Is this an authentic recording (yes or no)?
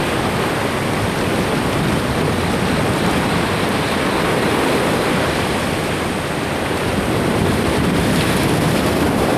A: yes